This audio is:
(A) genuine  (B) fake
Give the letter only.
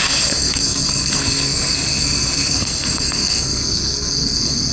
B